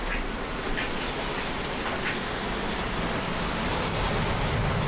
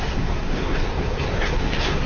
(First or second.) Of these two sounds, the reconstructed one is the second